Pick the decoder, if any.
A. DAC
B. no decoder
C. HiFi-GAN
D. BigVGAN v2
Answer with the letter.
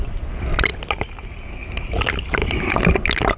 B